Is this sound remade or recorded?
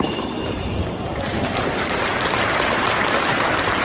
remade